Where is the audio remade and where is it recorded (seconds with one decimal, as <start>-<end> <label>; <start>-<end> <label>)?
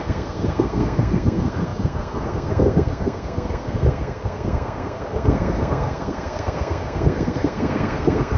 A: 0.0-8.4 remade